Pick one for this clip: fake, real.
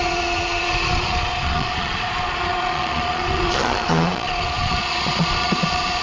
fake